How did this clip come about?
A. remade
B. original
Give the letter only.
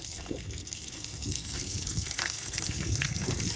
A